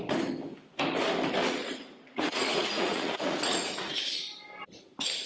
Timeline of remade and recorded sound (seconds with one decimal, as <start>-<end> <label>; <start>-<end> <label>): 0.0-1.4 recorded; 1.4-4.1 remade; 4.1-5.3 recorded